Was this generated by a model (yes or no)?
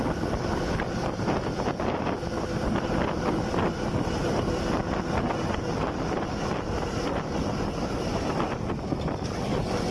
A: no